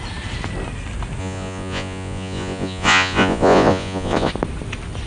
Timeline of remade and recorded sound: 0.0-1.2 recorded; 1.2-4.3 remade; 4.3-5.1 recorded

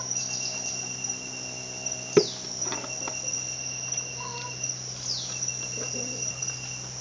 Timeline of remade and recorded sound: 0.0-7.0 recorded